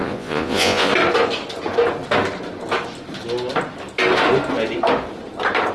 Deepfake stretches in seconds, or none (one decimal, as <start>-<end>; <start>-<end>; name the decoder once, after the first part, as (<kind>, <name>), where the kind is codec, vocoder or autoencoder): 0.0-0.9 (vocoder, Vocos)